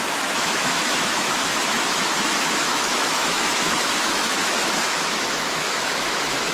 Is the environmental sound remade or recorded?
remade